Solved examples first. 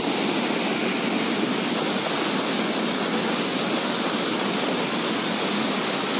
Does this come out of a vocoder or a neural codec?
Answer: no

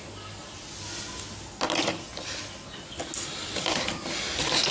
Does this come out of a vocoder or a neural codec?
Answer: no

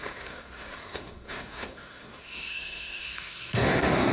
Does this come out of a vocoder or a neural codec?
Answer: yes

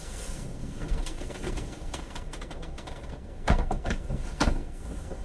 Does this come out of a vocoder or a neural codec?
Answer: yes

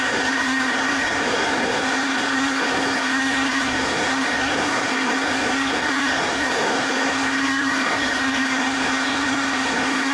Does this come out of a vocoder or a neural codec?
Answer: yes